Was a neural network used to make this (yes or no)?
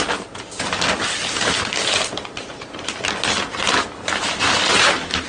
no